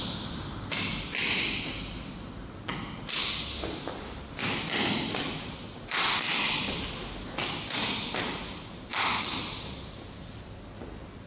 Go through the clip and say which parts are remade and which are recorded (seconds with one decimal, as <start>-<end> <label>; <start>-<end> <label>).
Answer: 0.0-11.3 recorded